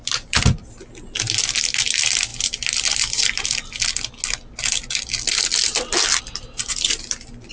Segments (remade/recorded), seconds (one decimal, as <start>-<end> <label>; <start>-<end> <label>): 0.0-7.5 recorded